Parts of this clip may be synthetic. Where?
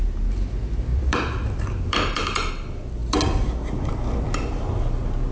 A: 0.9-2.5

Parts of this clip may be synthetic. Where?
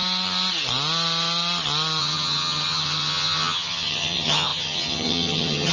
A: 2.0-5.7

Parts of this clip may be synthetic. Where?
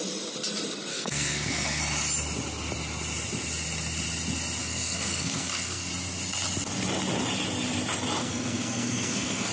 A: 0.9-1.8; 4.6-5.9; 8.2-9.5